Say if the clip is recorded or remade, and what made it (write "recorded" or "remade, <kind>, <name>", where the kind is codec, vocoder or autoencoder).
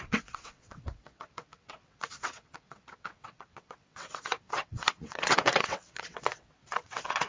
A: remade, vocoder, WaveNeXt